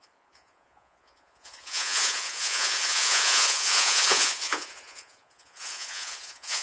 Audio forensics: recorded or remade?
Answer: remade